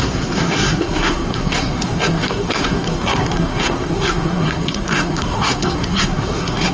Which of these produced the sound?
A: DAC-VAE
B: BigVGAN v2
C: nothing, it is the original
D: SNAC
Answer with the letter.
D